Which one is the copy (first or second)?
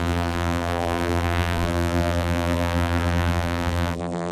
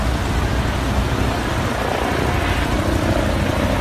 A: first